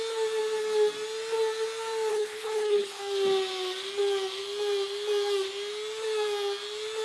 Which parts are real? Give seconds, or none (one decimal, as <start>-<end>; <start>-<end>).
0.0-2.1; 3.0-7.0